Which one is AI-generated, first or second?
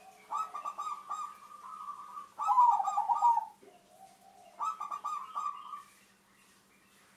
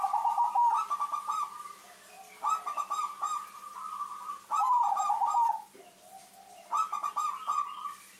second